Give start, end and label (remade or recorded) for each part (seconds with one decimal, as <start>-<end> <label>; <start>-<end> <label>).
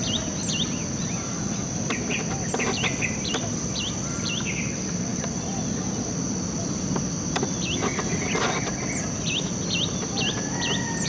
0.0-11.1 recorded